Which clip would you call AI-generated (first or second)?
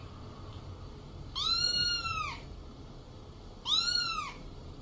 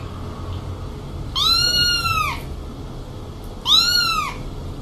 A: first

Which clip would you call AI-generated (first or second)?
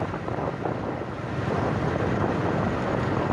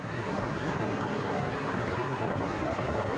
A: second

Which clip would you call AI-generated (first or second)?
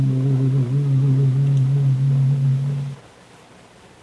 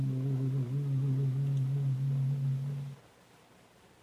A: first